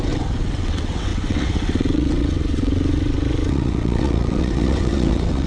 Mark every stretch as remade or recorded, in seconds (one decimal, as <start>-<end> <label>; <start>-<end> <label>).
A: 0.0-5.5 remade